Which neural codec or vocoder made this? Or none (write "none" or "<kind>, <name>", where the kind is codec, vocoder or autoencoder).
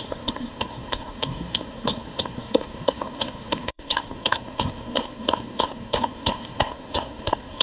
codec, SNAC